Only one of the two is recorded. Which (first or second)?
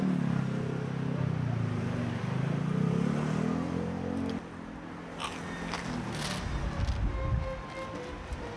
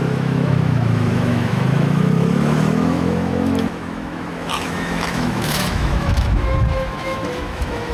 first